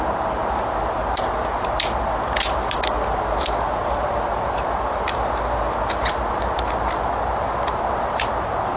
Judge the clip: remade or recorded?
recorded